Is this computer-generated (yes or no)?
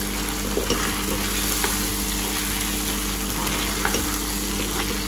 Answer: no